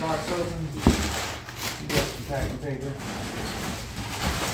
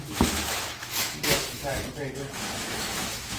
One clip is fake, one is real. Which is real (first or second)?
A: first